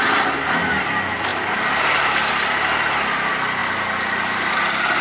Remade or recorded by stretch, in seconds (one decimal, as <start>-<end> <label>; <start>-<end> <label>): 0.0-5.0 recorded